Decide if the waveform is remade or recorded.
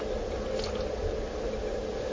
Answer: recorded